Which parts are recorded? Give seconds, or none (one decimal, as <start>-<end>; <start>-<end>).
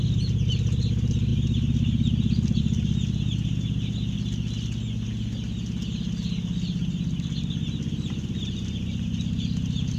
0.0-10.0